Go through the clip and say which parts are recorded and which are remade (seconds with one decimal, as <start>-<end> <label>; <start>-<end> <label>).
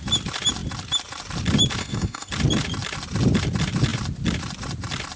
0.0-1.8 recorded; 1.8-2.3 remade; 2.3-5.2 recorded